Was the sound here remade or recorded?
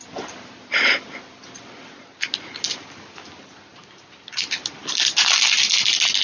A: recorded